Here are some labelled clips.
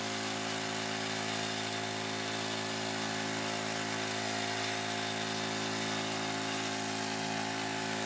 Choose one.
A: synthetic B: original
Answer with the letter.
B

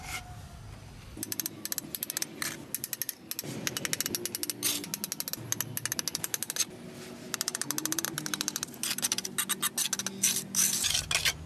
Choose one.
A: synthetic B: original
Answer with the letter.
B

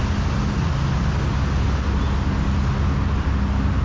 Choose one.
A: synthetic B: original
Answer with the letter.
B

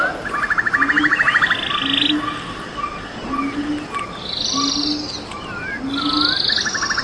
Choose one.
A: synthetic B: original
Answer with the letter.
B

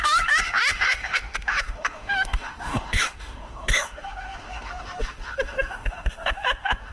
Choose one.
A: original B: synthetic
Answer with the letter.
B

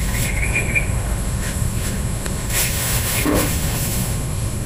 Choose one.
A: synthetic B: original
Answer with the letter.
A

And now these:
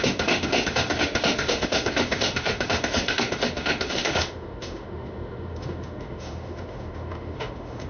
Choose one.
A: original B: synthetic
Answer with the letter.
B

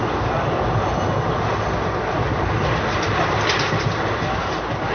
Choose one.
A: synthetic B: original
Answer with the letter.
B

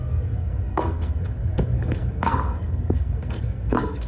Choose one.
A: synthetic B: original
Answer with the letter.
A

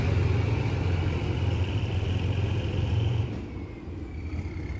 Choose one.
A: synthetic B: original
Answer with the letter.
A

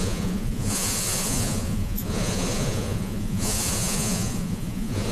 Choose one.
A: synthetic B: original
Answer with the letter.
A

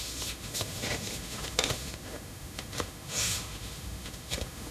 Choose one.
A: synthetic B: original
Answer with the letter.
A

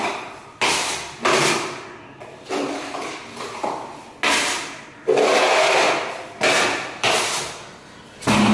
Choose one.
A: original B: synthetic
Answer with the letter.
A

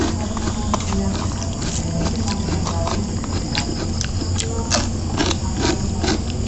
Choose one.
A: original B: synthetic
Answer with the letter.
A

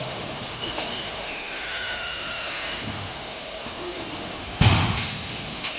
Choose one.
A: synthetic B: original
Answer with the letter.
A